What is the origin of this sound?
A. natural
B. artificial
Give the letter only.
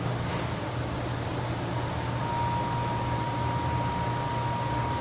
A